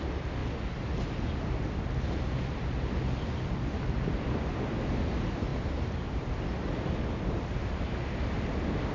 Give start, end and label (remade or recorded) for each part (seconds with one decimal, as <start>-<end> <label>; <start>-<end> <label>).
0.0-5.5 recorded; 5.5-6.3 remade; 6.3-8.9 recorded